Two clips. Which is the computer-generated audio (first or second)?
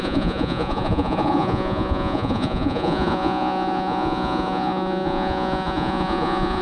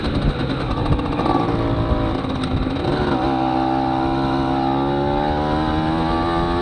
first